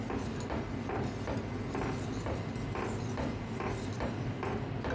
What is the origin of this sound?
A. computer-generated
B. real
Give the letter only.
B